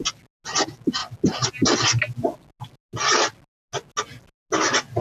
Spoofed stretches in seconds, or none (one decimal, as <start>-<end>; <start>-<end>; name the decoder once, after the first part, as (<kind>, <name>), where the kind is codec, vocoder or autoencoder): none